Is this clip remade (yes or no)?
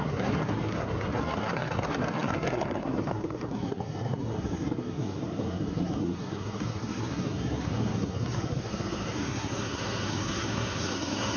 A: yes